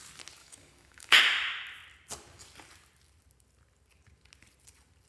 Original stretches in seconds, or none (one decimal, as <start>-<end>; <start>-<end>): 0.0-0.4; 1.2-5.1